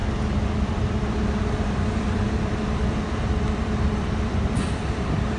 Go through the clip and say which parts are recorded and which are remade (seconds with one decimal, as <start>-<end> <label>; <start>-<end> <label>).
0.0-5.4 remade